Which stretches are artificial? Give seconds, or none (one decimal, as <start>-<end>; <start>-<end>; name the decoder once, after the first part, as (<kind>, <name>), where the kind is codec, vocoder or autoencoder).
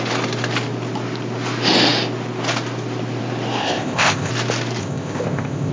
3.6-4.3 (codec, ZipCodec); 4.8-5.7